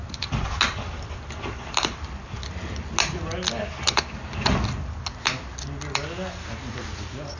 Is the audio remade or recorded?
recorded